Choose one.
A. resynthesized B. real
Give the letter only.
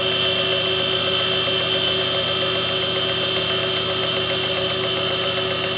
B